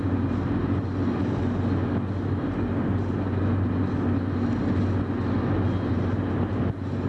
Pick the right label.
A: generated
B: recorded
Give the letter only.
B